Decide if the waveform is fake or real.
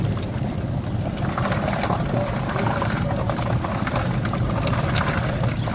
real